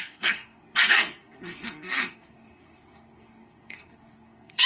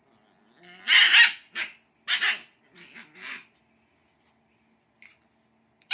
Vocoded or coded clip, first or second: first